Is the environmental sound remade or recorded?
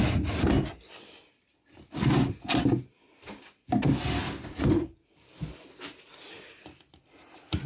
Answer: recorded